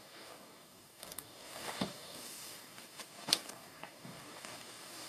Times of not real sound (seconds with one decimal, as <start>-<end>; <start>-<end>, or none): 0.0-5.1

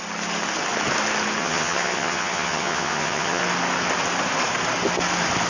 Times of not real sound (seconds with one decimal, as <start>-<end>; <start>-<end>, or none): 1.4-3.4

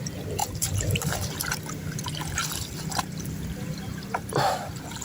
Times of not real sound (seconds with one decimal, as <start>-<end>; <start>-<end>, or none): 0.0-2.4; 3.3-5.0

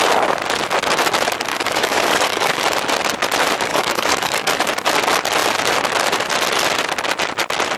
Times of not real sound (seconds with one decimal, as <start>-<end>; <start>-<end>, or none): 1.5-2.6; 3.7-4.5

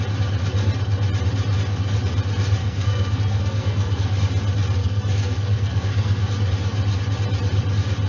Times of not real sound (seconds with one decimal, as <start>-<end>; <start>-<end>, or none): 2.6-4.1; 4.8-6.3

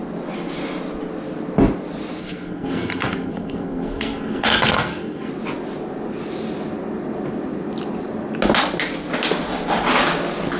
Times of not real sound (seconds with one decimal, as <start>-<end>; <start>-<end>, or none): 2.2-5.3

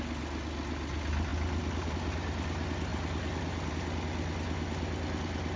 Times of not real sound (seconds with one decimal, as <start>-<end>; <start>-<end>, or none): none

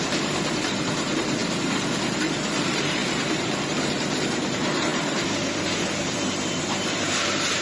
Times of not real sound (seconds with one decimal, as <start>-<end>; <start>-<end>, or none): 0.0-7.6